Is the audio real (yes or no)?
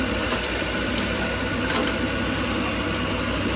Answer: yes